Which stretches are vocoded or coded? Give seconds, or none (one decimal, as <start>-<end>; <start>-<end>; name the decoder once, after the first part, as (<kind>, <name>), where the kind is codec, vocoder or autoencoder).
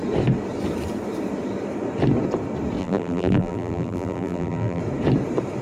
2.8-4.8 (vocoder, BigVGAN v2)